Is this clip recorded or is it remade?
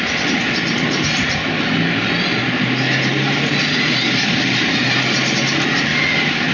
recorded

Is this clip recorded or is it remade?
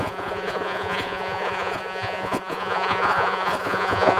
remade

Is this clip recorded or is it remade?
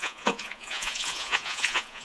remade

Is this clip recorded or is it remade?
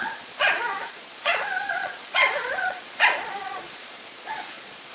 remade